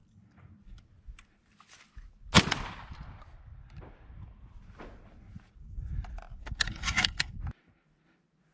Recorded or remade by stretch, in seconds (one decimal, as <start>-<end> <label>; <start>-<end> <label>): 0.0-6.4 recorded; 6.4-7.3 remade; 7.3-8.5 recorded